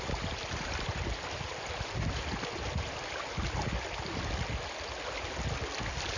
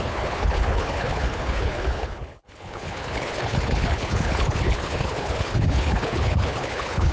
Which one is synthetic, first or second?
second